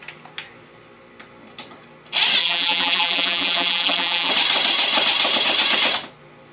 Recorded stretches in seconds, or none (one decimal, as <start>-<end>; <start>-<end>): 0.0-2.4; 4.3-6.5